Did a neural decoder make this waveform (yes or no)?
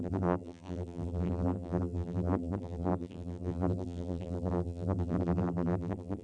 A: yes